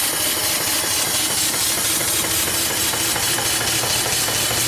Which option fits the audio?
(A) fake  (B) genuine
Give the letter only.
B